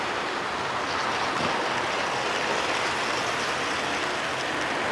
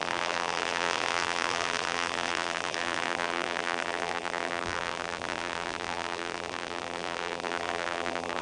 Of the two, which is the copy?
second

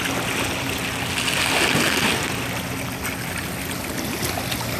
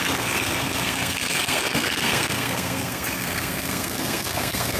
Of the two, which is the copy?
second